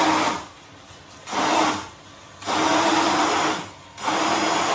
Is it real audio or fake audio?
real